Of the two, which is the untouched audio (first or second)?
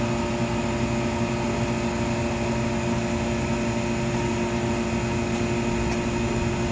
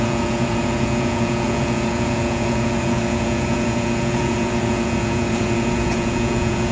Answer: first